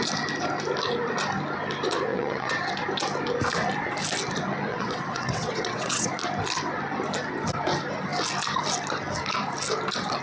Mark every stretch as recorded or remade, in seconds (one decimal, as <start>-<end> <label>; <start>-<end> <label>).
0.0-2.1 recorded; 2.1-2.6 remade; 2.6-4.7 recorded; 4.7-6.1 remade; 6.1-10.2 recorded